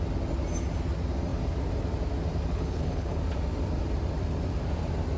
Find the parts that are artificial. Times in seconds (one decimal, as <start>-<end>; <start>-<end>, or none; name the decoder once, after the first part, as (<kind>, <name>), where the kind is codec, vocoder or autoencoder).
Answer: 2.5-3.2 (codec, HILCodec)